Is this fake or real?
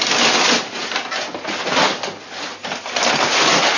real